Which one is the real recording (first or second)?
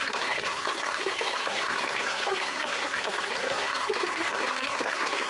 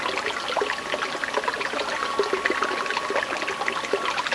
second